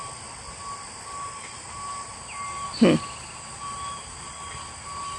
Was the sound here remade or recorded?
recorded